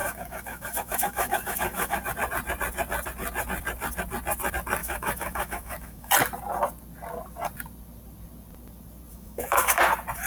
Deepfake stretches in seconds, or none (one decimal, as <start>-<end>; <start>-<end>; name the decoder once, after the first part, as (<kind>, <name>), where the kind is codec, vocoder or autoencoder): 0.0-2.0 (autoencoder, DAC-VAE); 4.8-6.1; 9.1-9.8